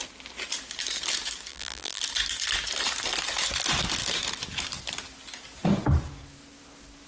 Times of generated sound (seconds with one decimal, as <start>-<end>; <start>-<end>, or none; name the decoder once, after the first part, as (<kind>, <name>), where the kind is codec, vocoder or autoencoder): 1.5-2.0 (vocoder, BigVGAN v2)